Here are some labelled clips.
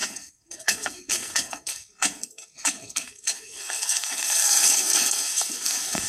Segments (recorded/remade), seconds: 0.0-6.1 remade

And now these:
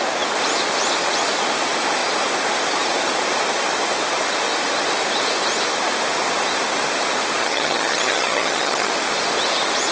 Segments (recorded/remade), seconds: 0.0-7.4 recorded; 7.4-8.9 remade; 8.9-9.9 recorded

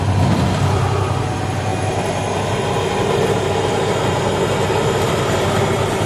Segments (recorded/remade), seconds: 0.0-6.1 recorded

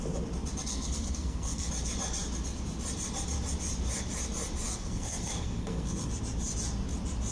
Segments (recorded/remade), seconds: 0.0-0.7 recorded; 0.7-1.7 remade; 1.7-4.7 recorded; 4.7-6.1 remade; 6.1-7.3 recorded